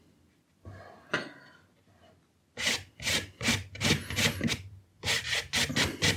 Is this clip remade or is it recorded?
recorded